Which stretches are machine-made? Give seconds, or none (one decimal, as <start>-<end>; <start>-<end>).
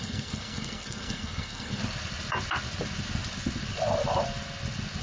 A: 0.0-1.8